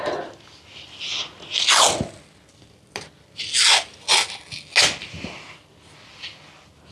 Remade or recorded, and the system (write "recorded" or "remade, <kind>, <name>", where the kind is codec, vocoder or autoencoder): recorded